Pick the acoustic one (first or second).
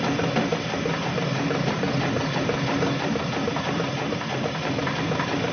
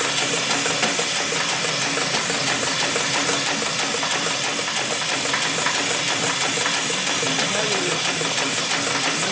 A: second